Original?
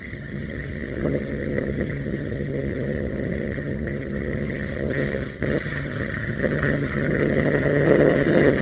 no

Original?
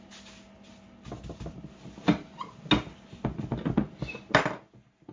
yes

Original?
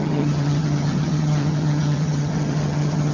no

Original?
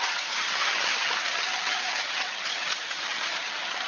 no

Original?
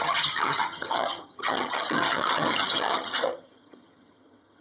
no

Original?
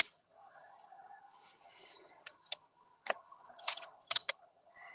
no